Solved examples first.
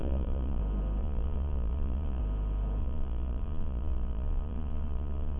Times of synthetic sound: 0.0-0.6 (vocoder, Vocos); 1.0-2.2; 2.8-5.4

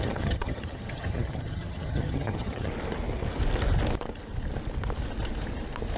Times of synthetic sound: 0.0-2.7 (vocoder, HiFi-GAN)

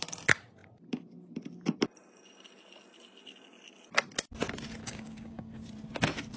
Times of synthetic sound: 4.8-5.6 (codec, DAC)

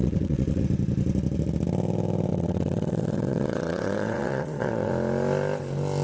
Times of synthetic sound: 0.0-0.6 (vocoder, WaveNeXt); 2.3-4.9

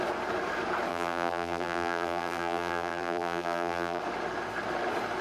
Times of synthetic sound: 0.9-4.0 (vocoder, BigVGAN v2)